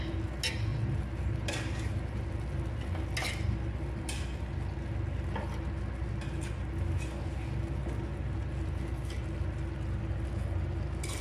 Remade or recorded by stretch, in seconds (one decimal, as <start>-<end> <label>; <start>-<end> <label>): 0.0-11.2 recorded